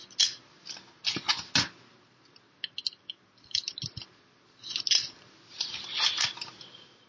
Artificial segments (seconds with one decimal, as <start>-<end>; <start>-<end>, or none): 2.8-3.6